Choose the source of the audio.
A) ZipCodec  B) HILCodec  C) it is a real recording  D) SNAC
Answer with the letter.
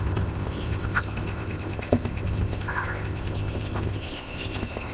A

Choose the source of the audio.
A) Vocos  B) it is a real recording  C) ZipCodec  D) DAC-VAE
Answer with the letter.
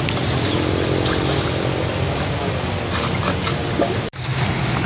B